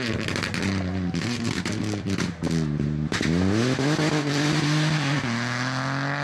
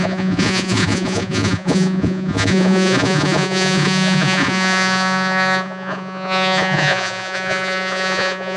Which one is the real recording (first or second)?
first